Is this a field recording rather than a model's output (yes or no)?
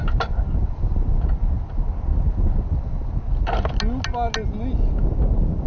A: yes